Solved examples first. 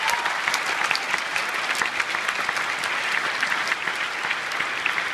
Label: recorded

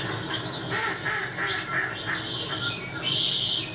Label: recorded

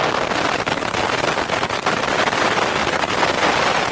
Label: recorded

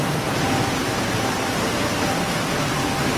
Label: recorded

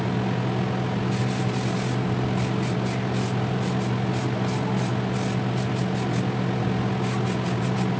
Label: recorded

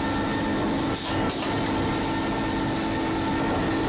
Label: recorded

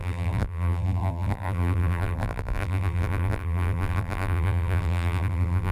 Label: remade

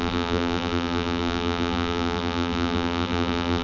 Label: remade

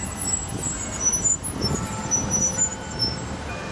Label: remade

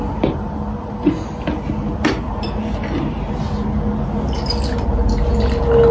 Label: recorded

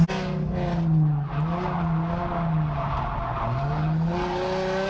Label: recorded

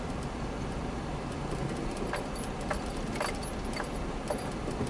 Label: recorded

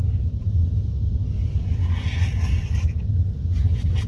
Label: recorded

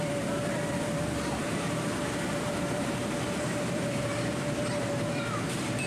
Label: remade